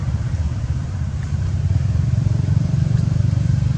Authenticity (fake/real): fake